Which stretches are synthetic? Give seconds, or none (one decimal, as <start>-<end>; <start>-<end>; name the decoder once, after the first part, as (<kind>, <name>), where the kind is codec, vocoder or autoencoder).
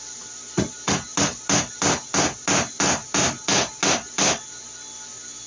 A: none